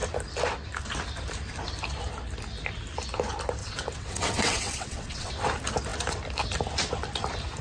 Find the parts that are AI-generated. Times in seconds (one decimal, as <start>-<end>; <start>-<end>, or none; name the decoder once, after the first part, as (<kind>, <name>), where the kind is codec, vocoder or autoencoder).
3.6-5.3 (vocoder, WaveNeXt)